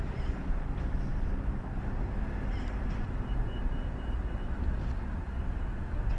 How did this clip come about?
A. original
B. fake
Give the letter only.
B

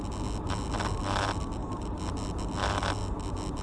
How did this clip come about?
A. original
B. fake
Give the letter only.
A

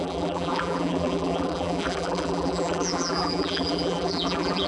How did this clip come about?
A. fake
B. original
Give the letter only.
A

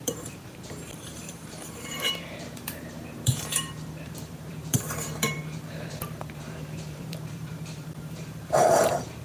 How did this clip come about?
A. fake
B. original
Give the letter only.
A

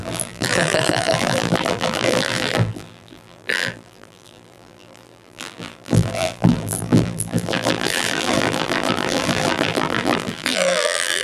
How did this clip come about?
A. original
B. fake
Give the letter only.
B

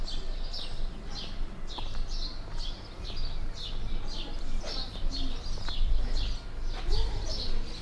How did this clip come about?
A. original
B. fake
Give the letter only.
A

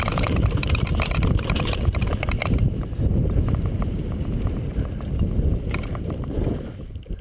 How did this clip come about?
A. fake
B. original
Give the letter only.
A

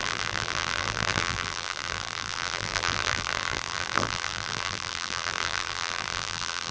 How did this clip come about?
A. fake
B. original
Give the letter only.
A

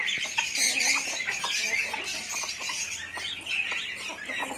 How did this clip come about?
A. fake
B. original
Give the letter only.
B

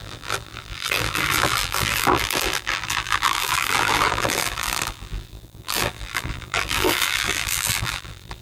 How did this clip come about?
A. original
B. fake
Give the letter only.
B